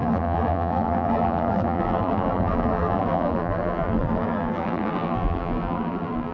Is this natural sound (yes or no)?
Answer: no